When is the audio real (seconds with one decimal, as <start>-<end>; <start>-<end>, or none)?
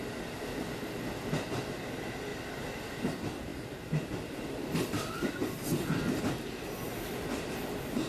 0.0-2.3; 2.9-3.5; 6.2-8.1